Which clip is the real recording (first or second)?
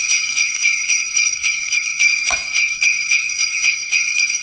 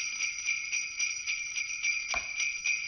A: second